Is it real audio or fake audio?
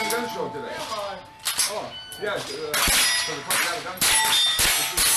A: real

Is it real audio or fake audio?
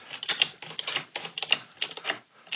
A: real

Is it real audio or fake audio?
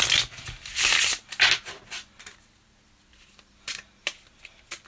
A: real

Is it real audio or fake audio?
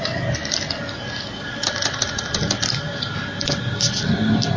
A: real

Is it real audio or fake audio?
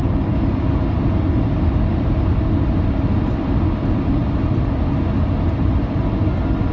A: real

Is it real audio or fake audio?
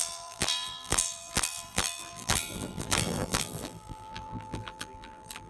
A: fake